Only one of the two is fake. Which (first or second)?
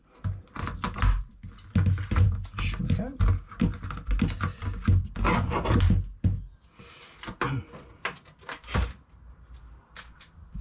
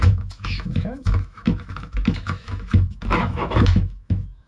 second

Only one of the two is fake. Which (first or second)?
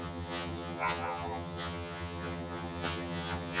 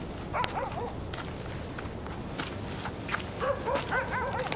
first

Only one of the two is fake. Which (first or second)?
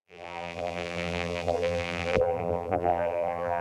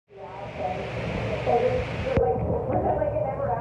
first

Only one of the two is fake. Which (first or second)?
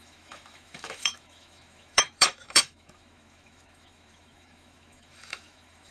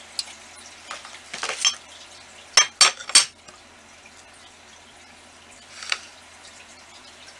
first